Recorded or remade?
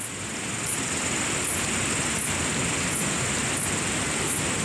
recorded